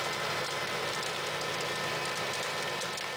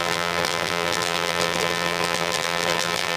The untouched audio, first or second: first